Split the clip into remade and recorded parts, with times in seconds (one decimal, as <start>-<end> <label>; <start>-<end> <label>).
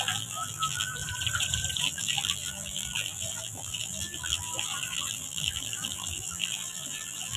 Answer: 0.0-1.0 remade; 1.0-1.8 recorded; 1.8-7.4 remade